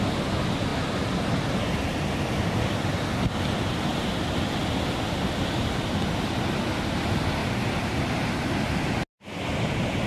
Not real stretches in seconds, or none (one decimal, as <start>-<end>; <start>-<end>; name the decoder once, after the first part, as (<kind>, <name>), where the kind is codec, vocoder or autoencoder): 3.9-4.6 (vocoder, BigVGAN v2); 7.4-8.3